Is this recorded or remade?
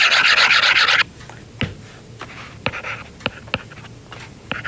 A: recorded